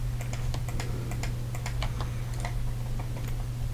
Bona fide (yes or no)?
yes